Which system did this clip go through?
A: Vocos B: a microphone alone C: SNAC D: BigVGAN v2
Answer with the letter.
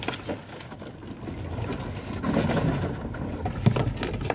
B